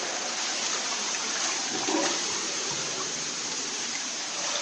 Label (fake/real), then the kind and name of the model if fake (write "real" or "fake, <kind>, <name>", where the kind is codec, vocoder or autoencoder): fake, vocoder, BigVGAN v2